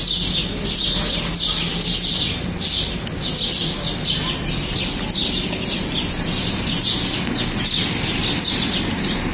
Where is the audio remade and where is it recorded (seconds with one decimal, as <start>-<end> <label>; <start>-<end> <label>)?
0.0-9.3 recorded

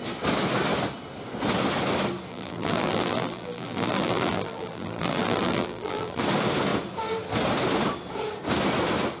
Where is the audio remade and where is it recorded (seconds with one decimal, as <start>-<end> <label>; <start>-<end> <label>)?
0.0-2.3 recorded; 2.3-6.2 remade; 6.2-9.2 recorded

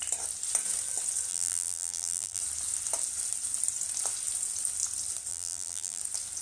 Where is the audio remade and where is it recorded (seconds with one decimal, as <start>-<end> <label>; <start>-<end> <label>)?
0.0-1.3 recorded; 1.3-2.4 remade; 2.4-5.3 recorded; 5.3-6.0 remade; 6.0-6.4 recorded

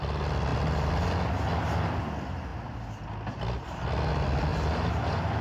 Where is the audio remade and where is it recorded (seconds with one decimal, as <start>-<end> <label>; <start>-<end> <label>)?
0.0-4.5 recorded; 4.5-5.4 remade

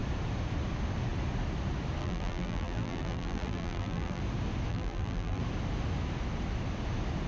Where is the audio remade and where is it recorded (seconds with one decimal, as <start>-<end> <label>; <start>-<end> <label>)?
0.0-2.0 recorded; 2.0-4.2 remade; 4.2-4.7 recorded; 4.7-5.4 remade; 5.4-7.3 recorded

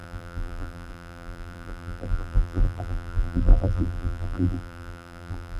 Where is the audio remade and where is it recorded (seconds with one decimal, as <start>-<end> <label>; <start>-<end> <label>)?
0.0-5.6 remade

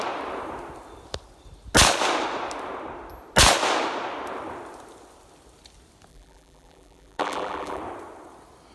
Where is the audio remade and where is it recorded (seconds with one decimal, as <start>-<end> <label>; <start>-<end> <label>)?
0.0-6.1 recorded; 6.1-7.8 remade; 7.8-8.7 recorded